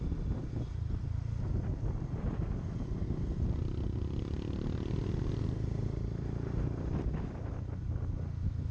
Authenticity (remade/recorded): recorded